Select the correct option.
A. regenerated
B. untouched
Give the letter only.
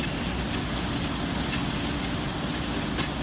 B